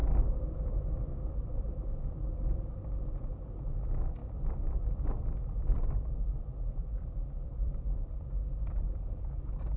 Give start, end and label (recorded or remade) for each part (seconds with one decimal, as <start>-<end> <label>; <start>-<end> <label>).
0.0-2.6 remade; 2.6-4.2 recorded; 4.2-9.2 remade; 9.2-9.8 recorded